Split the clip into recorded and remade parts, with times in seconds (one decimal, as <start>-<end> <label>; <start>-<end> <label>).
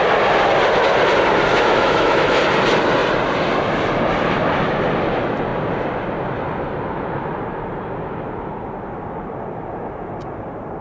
0.0-1.5 recorded; 1.5-2.4 remade; 2.4-10.8 recorded